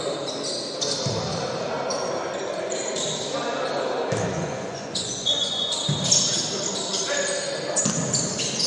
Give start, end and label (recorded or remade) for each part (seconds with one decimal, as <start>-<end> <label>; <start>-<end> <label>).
0.0-4.3 recorded; 4.3-5.7 remade; 5.7-8.7 recorded